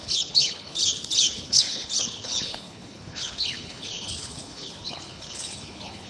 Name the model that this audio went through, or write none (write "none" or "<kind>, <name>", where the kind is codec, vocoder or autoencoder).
codec, HILCodec